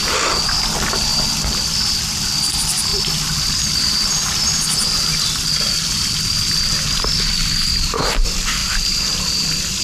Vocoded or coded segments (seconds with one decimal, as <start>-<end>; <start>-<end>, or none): none